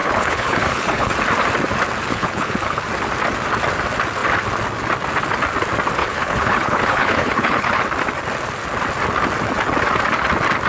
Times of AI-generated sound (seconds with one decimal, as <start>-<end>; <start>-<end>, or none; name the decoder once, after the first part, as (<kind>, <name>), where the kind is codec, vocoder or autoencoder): 0.0-1.1 (codec, HILCodec); 2.1-2.8; 6.0-7.7